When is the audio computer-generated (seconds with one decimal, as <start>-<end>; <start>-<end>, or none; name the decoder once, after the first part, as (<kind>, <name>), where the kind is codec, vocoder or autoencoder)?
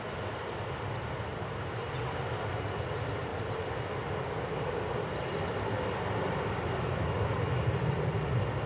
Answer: 1.3-1.9 (vocoder, BigVGAN v2)